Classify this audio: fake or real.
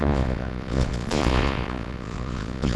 fake